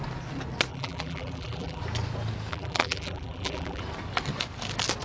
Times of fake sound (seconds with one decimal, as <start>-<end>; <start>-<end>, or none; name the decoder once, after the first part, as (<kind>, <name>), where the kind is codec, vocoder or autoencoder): 0.7-1.8 (vocoder, BigVGAN v2); 2.5-3.8